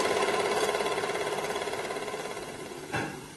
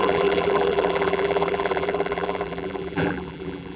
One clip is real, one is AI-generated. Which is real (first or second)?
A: first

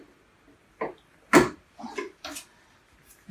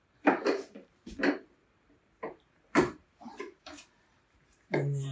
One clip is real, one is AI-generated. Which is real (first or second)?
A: first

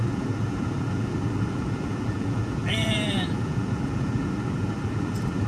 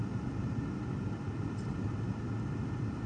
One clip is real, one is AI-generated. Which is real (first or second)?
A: second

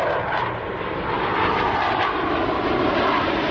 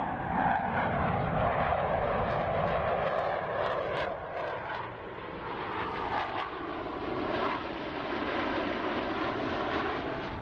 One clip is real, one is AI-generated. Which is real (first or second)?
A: second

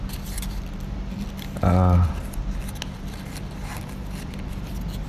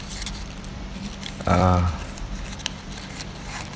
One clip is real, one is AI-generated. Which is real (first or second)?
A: first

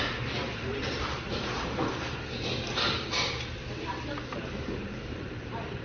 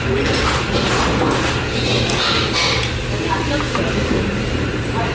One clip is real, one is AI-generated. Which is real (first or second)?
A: second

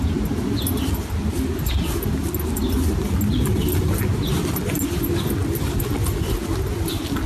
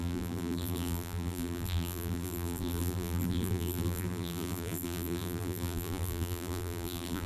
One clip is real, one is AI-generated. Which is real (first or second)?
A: first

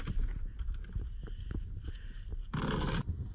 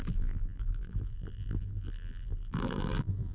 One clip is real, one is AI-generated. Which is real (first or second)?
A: first